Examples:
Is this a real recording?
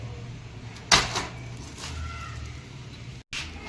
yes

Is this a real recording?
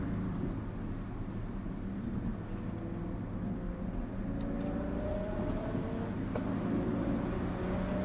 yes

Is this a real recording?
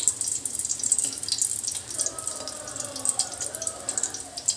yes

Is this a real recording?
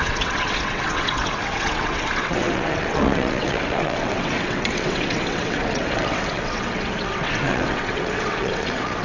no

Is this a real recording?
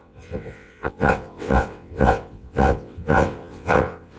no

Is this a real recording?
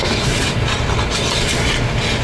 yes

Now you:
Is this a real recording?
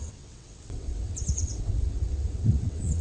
no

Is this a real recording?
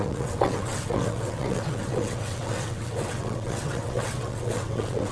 no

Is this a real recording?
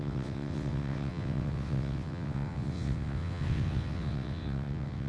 no